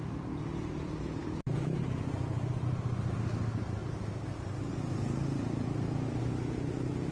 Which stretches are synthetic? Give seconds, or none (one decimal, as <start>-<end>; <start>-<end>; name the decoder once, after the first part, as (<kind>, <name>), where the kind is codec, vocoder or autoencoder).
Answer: 1.2-1.8 (autoencoder, DAC-VAE)